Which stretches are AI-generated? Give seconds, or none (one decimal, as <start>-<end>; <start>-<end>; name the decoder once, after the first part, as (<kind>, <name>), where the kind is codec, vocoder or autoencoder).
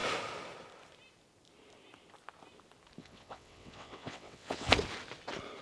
3.0-4.7 (vocoder, WaveNeXt)